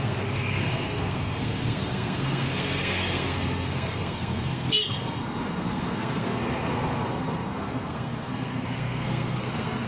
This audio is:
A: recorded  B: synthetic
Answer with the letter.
B